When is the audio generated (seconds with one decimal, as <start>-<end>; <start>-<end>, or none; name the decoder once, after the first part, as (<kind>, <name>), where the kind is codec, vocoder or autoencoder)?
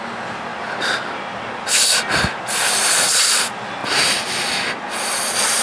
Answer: none